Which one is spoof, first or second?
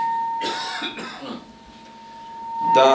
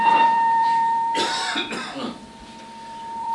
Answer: second